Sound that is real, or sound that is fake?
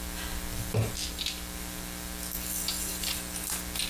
real